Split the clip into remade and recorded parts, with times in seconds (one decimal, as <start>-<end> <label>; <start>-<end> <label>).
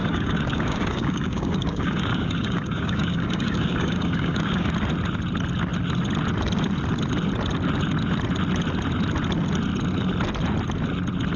0.0-4.7 remade; 4.7-11.4 recorded